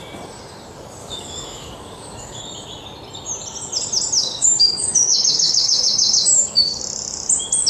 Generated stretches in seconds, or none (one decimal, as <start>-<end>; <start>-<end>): 1.0-2.4; 4.2-6.8